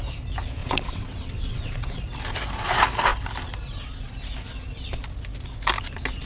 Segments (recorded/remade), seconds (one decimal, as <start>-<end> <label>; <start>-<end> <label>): 0.0-0.6 recorded; 0.6-2.0 remade; 2.0-6.3 recorded